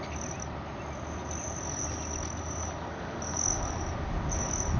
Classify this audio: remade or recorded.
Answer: recorded